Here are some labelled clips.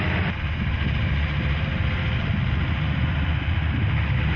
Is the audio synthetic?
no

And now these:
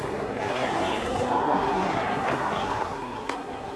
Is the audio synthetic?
yes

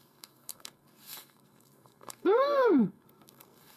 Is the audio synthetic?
yes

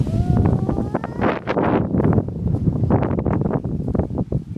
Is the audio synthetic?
no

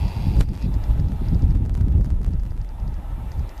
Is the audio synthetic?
no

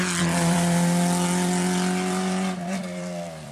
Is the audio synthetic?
yes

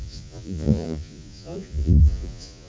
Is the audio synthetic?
yes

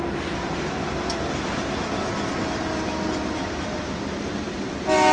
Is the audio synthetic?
no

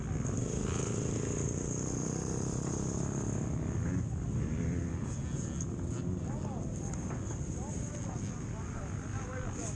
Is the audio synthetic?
no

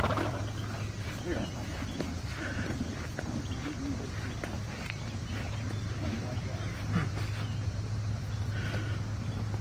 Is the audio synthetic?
no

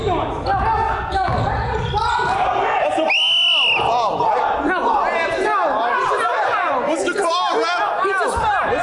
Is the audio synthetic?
no